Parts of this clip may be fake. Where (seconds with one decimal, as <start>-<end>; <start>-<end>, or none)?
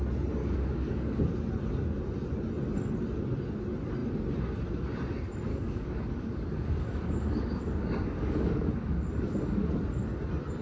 0.4-1.2; 5.5-9.7